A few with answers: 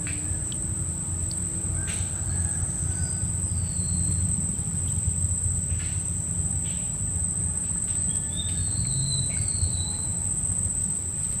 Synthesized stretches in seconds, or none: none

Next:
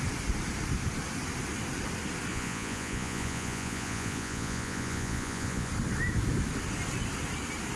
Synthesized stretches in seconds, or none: 2.3-5.7 (vocoder, Vocos)

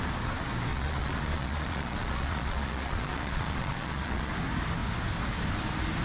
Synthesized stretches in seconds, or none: 0.7-4.3 (vocoder, Vocos)

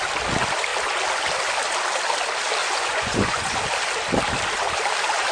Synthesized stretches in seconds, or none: 2.6-3.6 (vocoder, Vocos)

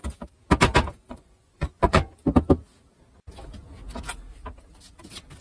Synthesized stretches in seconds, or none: 1.1-2.2 (vocoder, Vocos)

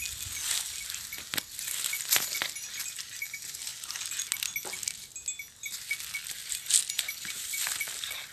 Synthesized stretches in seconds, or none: none

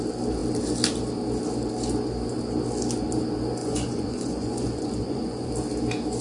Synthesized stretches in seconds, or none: 3.6-5.5 (vocoder, Vocos)

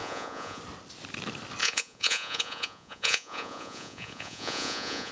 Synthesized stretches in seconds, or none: 0.0-0.6 (vocoder, Vocos); 1.6-5.1